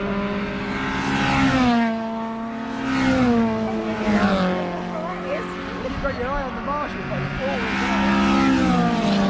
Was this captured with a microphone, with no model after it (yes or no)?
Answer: yes